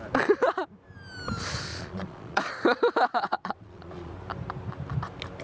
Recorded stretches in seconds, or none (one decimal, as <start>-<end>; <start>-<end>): 0.0-1.7; 2.5-3.1; 4.1-5.4